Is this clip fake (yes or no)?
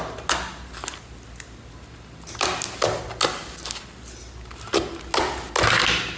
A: no